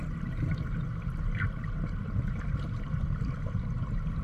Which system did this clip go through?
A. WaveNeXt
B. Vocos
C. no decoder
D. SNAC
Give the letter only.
C